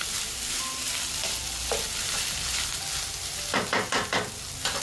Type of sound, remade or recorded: recorded